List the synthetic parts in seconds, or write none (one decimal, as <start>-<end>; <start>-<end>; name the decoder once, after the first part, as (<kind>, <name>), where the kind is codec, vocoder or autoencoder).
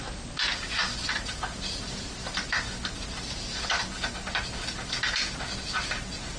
none